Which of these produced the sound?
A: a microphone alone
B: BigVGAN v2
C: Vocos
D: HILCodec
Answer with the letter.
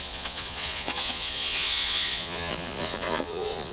C